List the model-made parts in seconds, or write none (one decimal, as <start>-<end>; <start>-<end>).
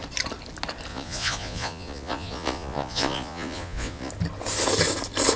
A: 0.9-4.1